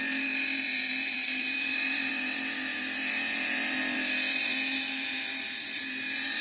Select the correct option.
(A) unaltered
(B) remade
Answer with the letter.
B